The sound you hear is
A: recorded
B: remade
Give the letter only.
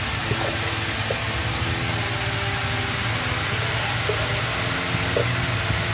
A